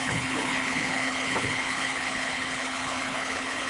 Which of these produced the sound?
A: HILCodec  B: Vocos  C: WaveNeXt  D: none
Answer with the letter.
A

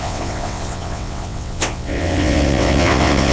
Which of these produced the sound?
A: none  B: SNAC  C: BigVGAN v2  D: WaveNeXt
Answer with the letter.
D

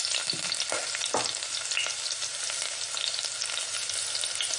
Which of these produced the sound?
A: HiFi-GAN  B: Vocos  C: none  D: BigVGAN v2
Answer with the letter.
C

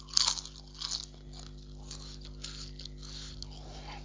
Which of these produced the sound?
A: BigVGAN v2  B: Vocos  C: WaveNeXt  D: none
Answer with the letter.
D